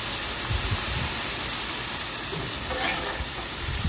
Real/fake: fake